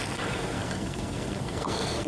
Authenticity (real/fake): fake